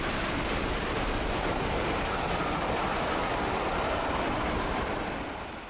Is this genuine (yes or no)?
no